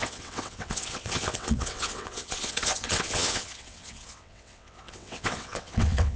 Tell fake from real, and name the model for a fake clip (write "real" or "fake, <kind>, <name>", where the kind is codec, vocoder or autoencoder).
fake, vocoder, WaveNeXt